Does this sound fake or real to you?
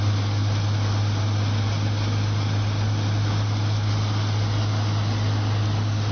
real